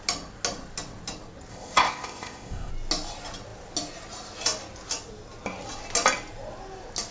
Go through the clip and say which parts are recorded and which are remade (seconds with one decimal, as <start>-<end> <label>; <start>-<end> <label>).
0.0-1.5 recorded; 1.5-2.7 remade; 2.7-7.1 recorded